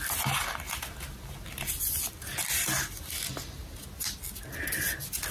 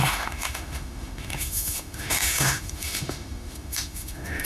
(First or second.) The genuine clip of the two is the first